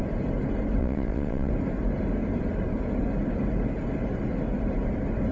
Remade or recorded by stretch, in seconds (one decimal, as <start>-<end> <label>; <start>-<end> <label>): 0.0-0.8 recorded; 0.8-1.5 remade; 1.5-5.3 recorded